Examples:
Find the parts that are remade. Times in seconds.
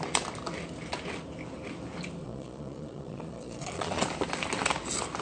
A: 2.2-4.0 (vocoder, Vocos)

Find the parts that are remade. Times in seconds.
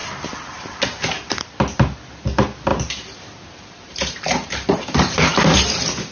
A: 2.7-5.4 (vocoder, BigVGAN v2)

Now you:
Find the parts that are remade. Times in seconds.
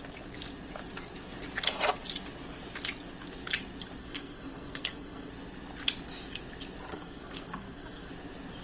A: 4.0-5.3 (codec, SNAC); 6.9-8.1